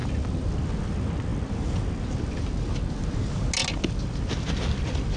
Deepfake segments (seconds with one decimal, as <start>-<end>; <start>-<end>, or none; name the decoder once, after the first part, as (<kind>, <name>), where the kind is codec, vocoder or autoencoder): none